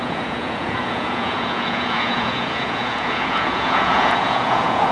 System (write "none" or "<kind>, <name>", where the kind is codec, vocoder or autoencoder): vocoder, Vocos